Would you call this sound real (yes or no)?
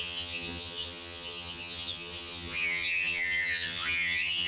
no